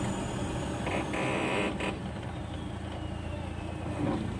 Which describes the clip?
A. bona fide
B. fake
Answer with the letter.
A